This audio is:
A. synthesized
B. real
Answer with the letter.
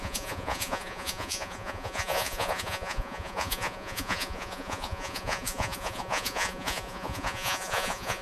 A